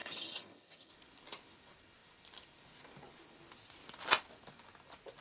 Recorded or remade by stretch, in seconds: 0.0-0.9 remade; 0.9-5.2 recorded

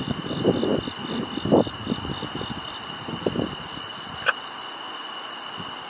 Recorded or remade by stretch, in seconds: 0.0-5.9 recorded

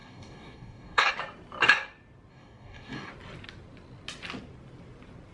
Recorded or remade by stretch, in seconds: 0.0-1.1 remade; 1.1-2.3 recorded; 2.3-3.1 remade; 3.1-5.3 recorded

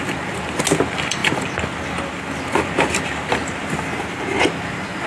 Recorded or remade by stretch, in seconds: 0.0-5.1 recorded

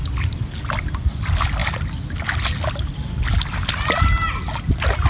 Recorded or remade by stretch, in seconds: 0.0-5.1 recorded

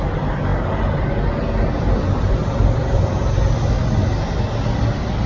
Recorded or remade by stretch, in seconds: 0.0-5.3 recorded

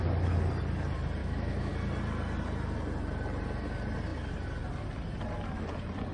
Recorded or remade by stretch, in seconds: 0.0-1.2 recorded; 1.2-1.7 remade; 1.7-6.1 recorded

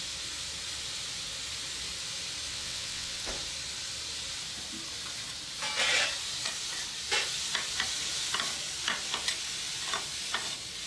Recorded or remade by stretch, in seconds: 0.0-2.5 recorded; 2.5-3.3 remade; 3.3-10.9 recorded